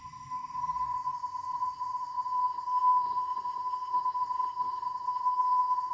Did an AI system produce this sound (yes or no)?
yes